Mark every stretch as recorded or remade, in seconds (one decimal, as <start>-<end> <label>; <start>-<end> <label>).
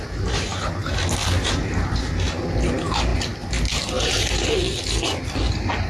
0.0-5.9 recorded